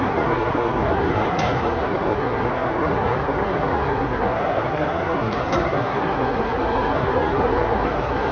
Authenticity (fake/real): fake